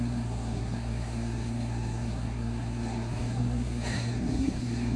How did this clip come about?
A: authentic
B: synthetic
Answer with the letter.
B